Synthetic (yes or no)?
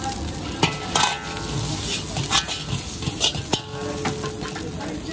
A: no